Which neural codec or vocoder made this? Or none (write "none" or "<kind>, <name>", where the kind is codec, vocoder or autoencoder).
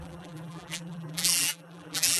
vocoder, BigVGAN v2